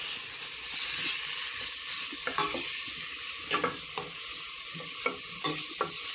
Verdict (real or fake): real